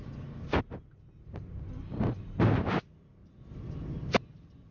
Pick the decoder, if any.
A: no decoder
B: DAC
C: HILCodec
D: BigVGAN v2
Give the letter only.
A